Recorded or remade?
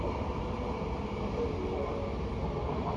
recorded